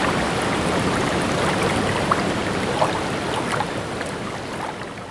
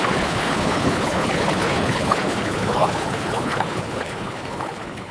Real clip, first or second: first